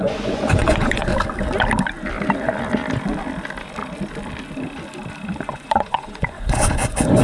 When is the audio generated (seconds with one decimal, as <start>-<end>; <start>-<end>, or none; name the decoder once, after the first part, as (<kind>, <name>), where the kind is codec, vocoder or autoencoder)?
0.0-1.1 (vocoder, Vocos); 5.4-7.2

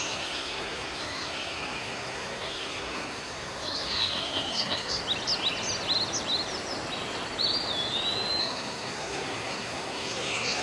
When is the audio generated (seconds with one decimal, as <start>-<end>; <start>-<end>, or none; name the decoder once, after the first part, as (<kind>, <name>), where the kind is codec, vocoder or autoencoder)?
0.0-5.0 (codec, SNAC); 8.4-10.6

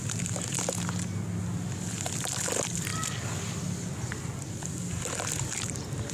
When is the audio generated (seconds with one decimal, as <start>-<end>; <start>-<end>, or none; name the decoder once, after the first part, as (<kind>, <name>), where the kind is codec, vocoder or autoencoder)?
none

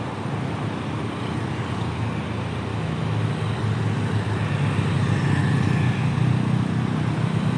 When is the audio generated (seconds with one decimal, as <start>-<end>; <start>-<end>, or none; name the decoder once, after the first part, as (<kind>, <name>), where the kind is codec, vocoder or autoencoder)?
2.7-3.3 (autoencoder, DAC-VAE)

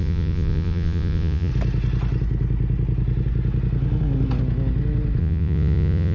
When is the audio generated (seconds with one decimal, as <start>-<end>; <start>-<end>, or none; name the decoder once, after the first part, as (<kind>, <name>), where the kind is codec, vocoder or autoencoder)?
0.0-1.5 (vocoder, Vocos); 5.2-6.1

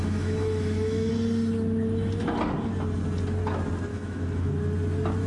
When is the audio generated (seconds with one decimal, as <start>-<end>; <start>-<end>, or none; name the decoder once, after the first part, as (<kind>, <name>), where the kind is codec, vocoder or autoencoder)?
0.0-1.1 (autoencoder, DAC-VAE); 3.9-4.5

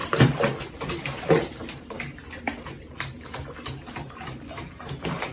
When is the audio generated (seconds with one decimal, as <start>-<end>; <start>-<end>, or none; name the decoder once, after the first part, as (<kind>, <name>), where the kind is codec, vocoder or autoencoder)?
0.7-2.2 (vocoder, BigVGAN v2); 2.8-5.3

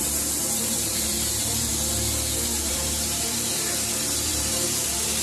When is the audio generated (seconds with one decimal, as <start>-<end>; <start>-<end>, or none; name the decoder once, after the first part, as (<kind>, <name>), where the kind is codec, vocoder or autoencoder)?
0.0-1.7 (vocoder, BigVGAN v2); 2.7-3.5; 4.0-5.2